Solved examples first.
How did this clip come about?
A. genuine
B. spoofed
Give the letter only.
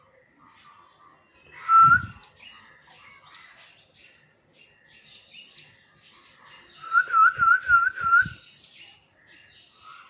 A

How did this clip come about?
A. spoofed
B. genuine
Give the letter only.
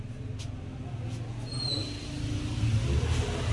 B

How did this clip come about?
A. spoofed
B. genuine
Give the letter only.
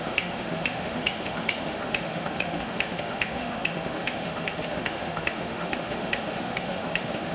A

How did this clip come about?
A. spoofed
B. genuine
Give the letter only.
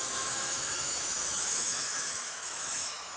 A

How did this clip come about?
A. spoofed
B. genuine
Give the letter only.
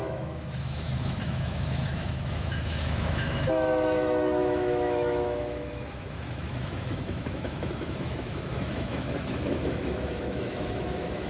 A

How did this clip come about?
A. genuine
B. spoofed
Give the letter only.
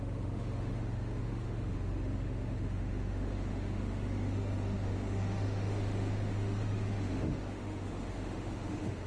B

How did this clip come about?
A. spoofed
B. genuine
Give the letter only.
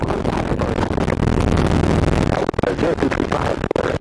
B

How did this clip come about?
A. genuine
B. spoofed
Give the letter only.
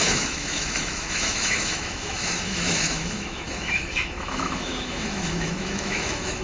B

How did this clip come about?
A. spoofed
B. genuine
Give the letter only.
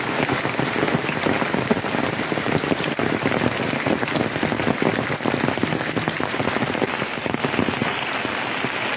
B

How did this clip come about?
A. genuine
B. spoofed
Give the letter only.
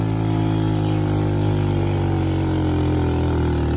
A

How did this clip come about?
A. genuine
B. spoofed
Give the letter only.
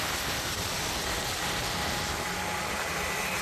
A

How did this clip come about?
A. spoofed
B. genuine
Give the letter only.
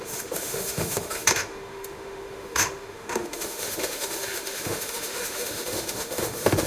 A